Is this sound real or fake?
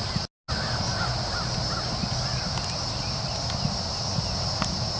real